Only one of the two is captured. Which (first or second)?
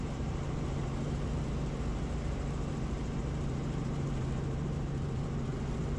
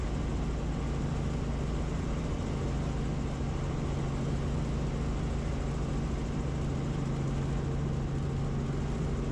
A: second